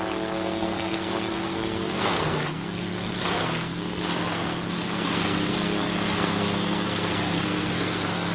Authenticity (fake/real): fake